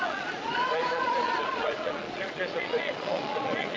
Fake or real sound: fake